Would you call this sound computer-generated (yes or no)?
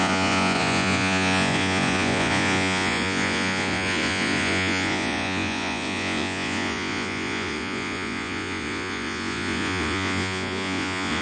yes